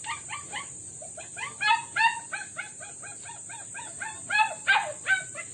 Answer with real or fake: real